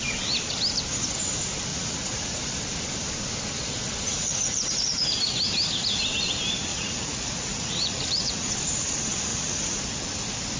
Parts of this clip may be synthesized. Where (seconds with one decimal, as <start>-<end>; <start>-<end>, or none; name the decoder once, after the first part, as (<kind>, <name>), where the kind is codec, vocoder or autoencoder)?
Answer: 1.7-2.4 (vocoder, Vocos); 4.1-5.0; 6.7-8.5; 9.3-9.8

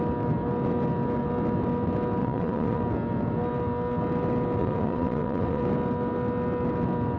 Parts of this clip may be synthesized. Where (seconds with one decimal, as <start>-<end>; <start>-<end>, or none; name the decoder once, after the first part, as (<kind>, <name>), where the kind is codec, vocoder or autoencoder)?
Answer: 2.2-2.8 (vocoder, Vocos); 4.6-5.6

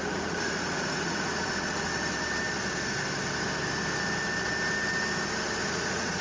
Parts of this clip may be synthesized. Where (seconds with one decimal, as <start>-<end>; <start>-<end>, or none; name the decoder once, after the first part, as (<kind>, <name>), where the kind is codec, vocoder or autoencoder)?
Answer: 0.0-1.9 (vocoder, Vocos); 5.6-6.2